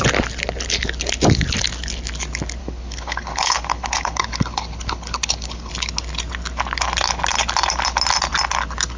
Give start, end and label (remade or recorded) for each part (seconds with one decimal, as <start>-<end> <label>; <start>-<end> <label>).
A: 0.0-2.6 recorded; 2.6-5.7 remade; 5.7-9.0 recorded